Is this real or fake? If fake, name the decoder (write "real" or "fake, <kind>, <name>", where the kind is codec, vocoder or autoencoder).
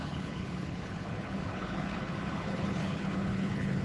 fake, codec, HILCodec